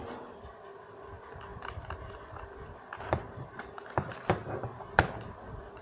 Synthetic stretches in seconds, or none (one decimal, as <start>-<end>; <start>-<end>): 1.5-3.7; 4.4-5.0